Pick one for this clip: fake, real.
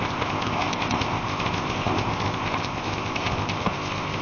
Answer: fake